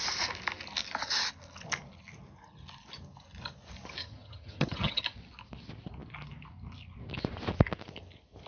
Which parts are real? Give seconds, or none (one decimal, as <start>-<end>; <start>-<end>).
0.0-4.0; 5.0-8.5